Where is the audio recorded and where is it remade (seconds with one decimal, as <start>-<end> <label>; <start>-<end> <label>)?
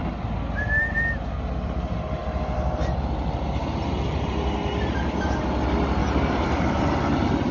0.0-6.0 recorded; 6.0-6.8 remade; 6.8-7.5 recorded